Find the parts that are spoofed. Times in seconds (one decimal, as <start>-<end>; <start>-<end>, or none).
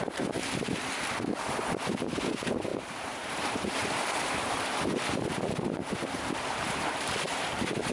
0.0-0.4; 1.4-7.9